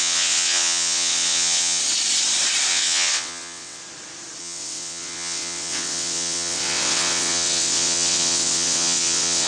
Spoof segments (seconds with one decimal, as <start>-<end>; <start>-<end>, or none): 0.0-1.8; 2.7-3.8; 4.4-9.5